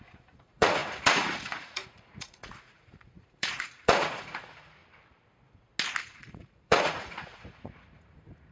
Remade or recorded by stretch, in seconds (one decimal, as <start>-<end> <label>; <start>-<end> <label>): 0.0-4.8 remade; 4.8-6.0 recorded; 6.0-8.5 remade